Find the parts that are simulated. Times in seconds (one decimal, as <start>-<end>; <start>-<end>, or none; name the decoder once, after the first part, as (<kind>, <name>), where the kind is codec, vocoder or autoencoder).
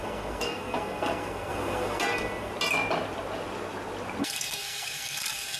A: 0.0-2.5 (codec, SNAC); 4.2-5.6